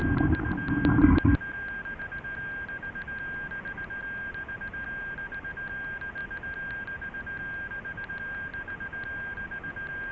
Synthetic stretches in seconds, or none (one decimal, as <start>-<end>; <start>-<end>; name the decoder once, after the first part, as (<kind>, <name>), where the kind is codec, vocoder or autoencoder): none